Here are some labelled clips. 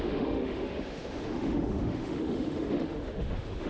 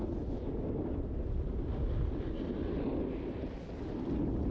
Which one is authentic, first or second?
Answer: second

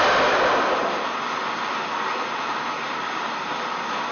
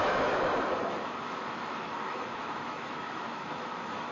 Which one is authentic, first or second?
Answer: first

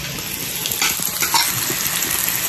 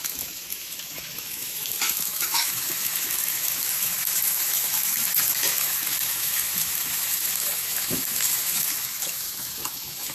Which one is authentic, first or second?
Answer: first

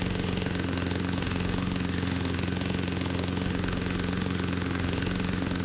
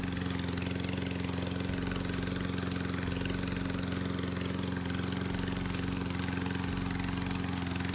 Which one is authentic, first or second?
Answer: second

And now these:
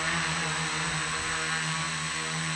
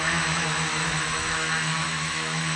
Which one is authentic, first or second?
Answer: first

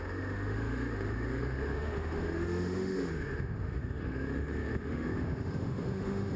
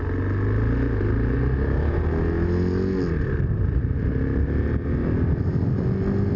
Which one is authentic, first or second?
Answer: second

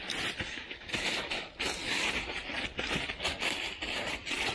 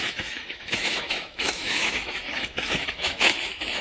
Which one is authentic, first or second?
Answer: first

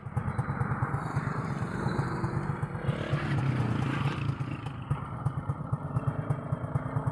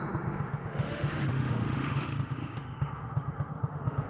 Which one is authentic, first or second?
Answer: first